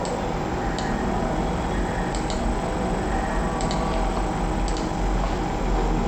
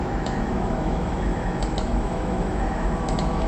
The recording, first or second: first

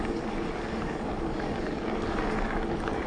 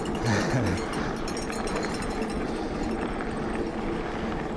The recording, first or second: second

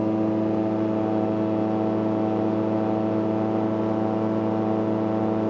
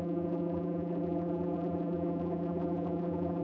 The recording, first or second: first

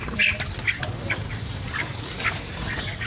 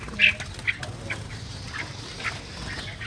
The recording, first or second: second